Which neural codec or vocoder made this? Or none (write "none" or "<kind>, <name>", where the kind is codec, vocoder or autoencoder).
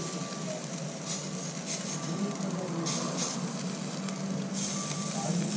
none